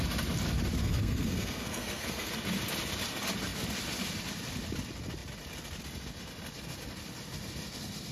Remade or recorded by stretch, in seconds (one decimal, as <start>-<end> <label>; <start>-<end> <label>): 0.0-0.8 recorded; 0.8-2.3 remade; 2.3-8.1 recorded